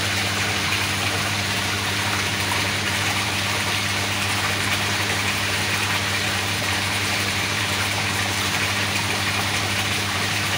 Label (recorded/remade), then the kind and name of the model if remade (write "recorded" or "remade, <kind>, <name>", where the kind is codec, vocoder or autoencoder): remade, vocoder, BigVGAN v2